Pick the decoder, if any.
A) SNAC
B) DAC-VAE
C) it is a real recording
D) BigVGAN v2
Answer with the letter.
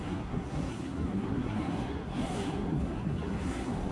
A